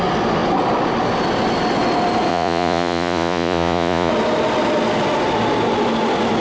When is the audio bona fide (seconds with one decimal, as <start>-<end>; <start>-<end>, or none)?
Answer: 0.0-2.3; 4.1-6.4